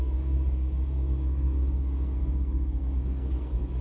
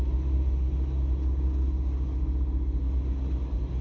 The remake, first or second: first